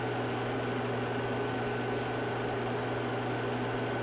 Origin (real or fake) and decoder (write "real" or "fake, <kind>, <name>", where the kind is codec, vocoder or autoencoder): real